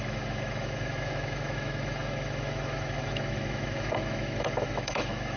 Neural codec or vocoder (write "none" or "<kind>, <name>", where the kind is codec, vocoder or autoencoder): autoencoder, DAC-VAE